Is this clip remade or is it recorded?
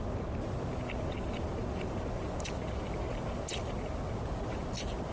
recorded